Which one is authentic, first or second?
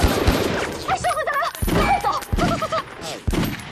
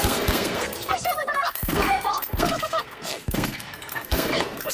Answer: first